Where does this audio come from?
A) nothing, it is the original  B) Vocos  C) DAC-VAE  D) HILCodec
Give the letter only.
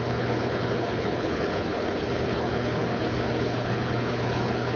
D